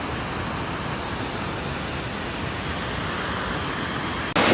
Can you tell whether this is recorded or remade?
recorded